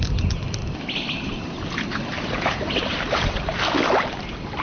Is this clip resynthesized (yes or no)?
no